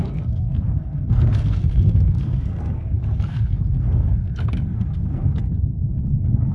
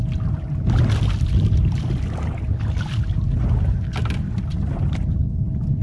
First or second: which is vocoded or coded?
first